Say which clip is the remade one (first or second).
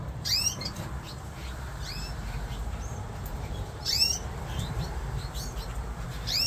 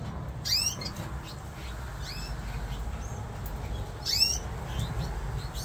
first